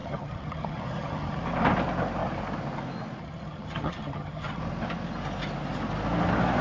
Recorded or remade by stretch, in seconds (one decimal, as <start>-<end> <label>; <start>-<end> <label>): 0.0-1.4 remade; 1.4-3.2 recorded; 3.2-4.6 remade; 4.6-6.6 recorded